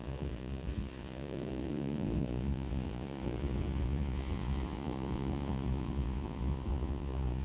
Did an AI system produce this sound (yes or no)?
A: yes